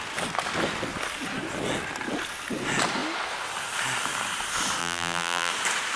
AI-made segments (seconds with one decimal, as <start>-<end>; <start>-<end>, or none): 4.8-5.5

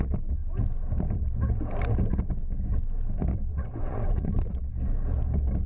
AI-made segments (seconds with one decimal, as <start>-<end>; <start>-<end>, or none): 3.5-4.7

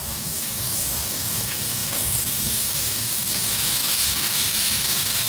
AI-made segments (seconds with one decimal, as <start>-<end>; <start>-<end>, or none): 0.0-5.3

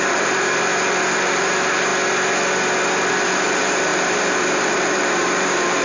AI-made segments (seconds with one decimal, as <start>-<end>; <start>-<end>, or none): 0.0-0.7; 1.3-1.9; 3.1-5.8

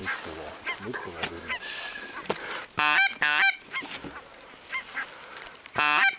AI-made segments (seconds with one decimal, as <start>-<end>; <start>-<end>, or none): none

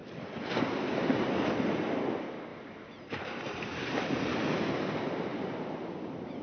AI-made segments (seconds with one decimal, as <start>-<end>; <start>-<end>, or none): 2.5-4.2; 5.3-6.4